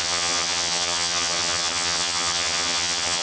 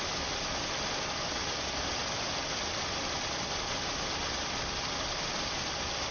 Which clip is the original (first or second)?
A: second